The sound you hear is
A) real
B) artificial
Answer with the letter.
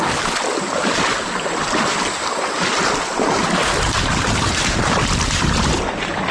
A